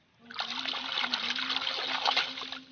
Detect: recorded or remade recorded